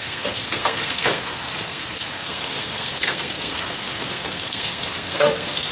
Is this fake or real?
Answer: fake